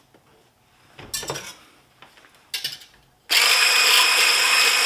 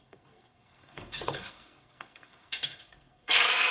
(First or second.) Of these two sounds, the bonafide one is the first